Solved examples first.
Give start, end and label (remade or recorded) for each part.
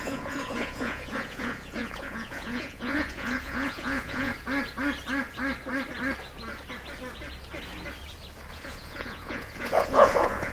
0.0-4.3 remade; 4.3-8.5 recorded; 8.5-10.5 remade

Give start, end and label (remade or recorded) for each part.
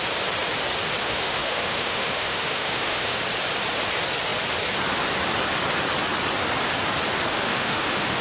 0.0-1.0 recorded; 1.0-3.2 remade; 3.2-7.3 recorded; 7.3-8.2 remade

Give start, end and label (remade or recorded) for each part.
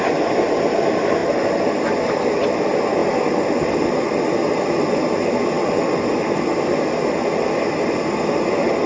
0.0-8.9 recorded